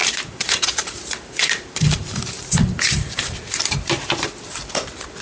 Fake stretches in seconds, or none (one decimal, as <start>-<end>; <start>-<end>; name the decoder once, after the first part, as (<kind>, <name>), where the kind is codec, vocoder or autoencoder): 0.0-5.2 (vocoder, BigVGAN v2)